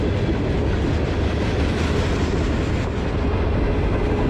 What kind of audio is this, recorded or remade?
recorded